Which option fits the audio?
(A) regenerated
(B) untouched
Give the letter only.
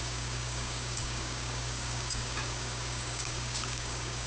A